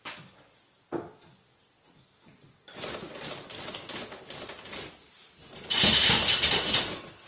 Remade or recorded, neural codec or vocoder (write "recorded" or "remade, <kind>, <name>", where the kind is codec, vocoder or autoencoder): recorded